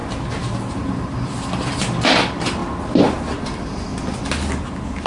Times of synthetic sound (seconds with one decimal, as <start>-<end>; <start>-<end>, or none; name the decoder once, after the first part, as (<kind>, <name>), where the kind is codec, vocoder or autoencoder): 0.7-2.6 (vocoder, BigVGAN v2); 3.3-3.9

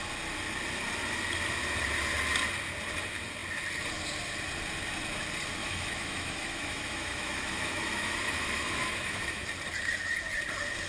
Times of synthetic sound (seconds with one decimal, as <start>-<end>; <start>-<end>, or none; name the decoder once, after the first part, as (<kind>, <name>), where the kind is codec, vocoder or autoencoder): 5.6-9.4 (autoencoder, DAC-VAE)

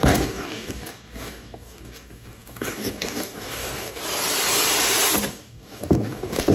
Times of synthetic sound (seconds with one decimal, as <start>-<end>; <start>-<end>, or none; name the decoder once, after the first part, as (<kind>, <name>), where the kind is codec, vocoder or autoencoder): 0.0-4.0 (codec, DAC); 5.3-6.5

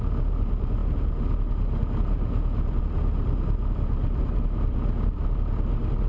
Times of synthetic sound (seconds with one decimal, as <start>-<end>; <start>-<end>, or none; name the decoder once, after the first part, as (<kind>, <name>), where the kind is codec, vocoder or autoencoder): none

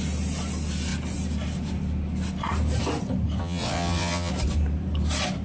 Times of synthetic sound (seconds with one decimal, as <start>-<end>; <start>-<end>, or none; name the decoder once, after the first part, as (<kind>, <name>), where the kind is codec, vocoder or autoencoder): 3.4-4.3 (vocoder, WaveNeXt)

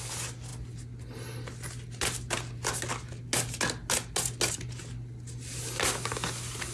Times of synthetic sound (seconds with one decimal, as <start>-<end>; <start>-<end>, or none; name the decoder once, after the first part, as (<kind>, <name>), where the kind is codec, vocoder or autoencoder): none

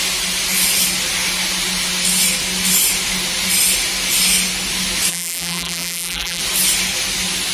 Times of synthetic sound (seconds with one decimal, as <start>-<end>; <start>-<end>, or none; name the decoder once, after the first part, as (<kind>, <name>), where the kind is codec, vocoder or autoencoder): 5.1-6.4 (vocoder, BigVGAN v2)